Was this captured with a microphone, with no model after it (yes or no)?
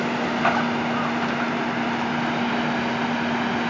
yes